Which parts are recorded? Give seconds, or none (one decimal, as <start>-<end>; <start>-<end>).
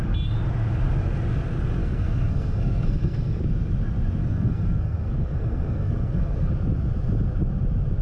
0.0-1.8; 3.4-4.2; 6.5-8.0